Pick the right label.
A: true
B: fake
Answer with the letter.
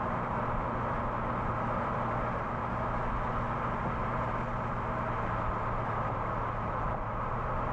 A